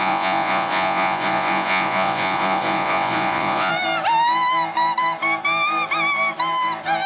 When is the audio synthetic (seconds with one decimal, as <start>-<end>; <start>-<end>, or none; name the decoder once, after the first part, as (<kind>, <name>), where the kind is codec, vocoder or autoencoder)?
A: 0.0-3.7 (vocoder, Vocos)